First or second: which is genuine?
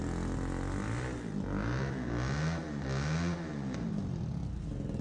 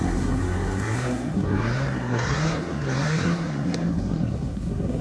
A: first